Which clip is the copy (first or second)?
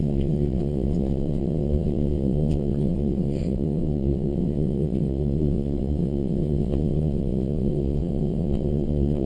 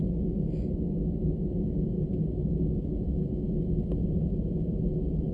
first